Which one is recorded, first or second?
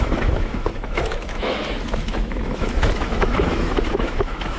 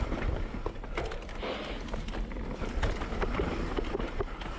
second